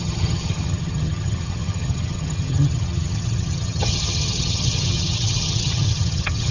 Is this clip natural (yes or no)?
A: no